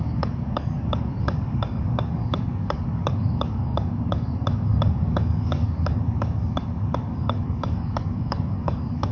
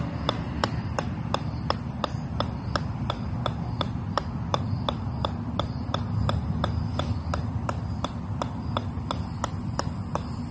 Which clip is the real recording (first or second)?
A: second